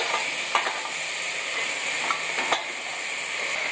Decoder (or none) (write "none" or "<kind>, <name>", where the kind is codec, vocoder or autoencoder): none